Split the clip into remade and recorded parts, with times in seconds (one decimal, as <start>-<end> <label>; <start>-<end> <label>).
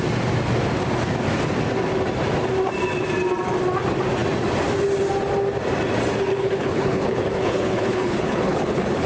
0.0-6.3 recorded; 6.3-9.1 remade